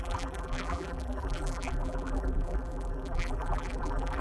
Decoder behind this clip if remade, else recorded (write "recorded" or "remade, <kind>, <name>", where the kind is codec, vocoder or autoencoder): remade, vocoder, BigVGAN v2